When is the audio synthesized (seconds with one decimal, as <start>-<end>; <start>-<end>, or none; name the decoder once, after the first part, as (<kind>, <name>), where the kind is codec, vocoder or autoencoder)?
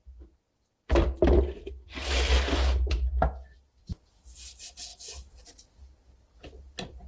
none